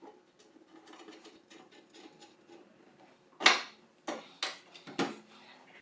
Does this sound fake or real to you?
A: real